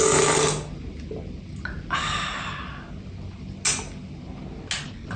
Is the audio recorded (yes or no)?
yes